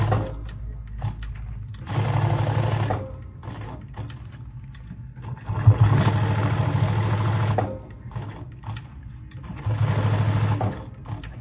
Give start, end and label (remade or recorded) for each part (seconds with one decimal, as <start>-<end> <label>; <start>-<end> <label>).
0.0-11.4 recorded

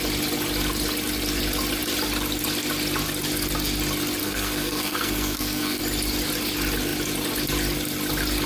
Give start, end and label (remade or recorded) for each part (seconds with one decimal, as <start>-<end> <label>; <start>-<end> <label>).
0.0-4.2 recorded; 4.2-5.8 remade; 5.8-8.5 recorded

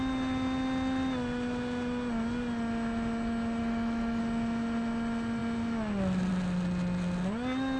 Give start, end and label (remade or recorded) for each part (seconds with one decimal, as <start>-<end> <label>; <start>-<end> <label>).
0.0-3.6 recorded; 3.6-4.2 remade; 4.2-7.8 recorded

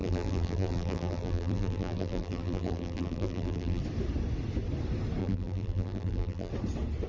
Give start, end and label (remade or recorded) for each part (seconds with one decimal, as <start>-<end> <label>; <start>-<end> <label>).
0.0-3.8 remade; 3.8-5.2 recorded; 5.2-6.5 remade; 6.5-7.1 recorded